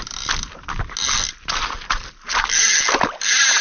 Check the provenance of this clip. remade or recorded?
recorded